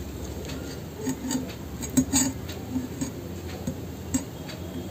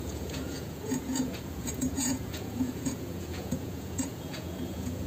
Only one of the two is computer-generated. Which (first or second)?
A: second